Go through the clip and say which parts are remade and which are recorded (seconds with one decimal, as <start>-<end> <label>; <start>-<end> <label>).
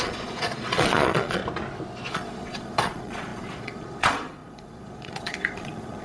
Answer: 0.0-1.4 remade; 1.4-2.1 recorded; 2.1-6.0 remade